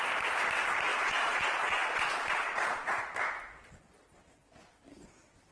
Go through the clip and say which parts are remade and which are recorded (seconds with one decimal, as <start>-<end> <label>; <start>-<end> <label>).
0.0-0.9 recorded; 0.9-3.0 remade; 3.0-5.5 recorded